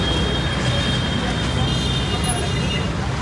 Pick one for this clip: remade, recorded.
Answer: recorded